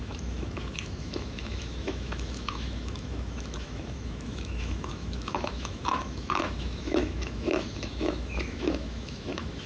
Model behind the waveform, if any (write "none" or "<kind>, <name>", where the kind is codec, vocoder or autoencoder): autoencoder, DAC-VAE